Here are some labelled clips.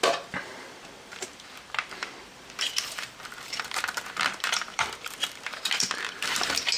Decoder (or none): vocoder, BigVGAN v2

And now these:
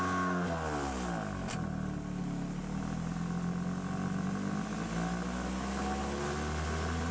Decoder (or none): none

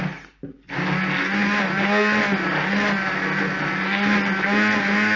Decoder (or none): none